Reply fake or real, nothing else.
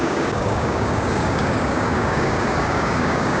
fake